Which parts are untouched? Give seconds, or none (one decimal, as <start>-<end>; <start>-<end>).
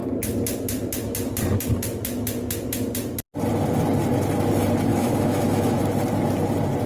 0.0-4.9; 5.8-6.9